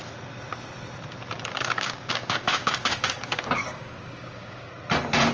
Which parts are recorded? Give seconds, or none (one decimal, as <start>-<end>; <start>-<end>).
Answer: 0.0-1.5; 4.7-5.3